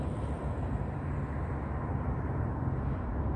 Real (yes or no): yes